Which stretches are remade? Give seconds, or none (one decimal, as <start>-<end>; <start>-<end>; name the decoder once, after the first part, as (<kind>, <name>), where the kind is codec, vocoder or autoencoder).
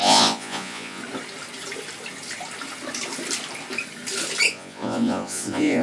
0.0-1.0 (vocoder, Vocos); 4.5-5.8